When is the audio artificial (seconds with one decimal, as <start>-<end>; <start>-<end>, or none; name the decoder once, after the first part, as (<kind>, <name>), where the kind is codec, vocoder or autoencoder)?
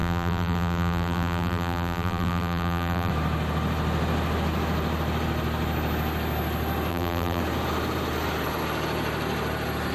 0.0-3.1 (vocoder, BigVGAN v2); 6.9-7.4